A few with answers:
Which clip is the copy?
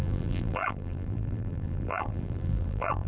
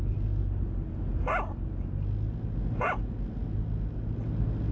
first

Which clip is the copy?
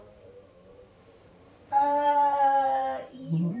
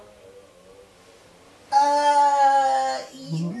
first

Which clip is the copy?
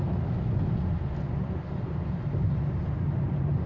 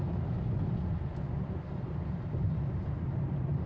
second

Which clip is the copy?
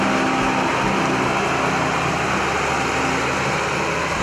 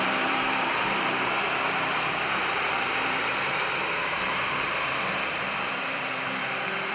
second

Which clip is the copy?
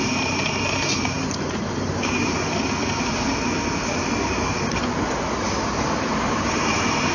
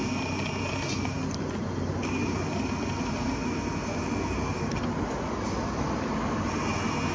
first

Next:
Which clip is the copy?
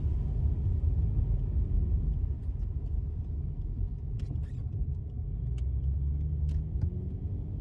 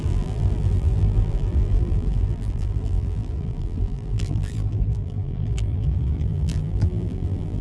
second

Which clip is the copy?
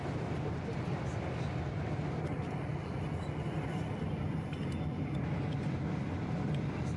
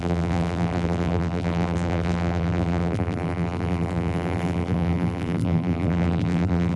second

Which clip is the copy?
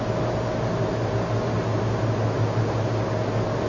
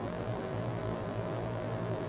second